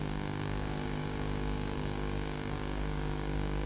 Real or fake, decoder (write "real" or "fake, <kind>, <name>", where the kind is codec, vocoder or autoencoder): fake, codec, DAC